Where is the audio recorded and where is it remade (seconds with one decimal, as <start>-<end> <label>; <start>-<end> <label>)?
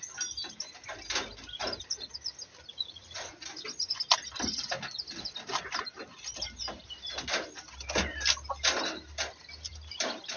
0.0-2.7 recorded; 2.7-3.4 remade; 3.4-10.4 recorded